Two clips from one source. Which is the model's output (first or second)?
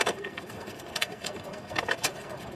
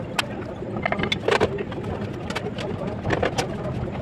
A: first